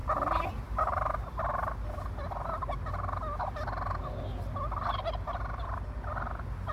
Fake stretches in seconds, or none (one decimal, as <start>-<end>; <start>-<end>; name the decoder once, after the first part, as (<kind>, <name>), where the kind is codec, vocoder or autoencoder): none